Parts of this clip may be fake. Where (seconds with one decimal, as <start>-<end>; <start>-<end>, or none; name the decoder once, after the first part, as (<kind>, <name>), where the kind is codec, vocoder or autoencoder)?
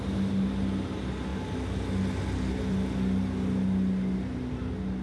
none